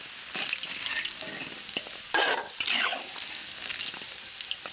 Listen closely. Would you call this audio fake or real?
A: real